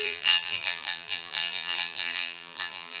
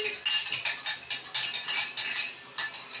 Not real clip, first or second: first